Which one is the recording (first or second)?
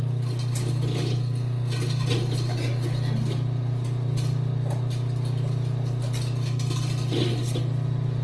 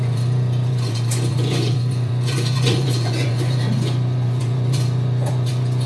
first